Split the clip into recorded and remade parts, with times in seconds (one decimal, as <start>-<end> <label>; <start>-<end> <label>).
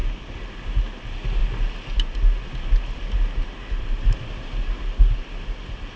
0.0-6.0 recorded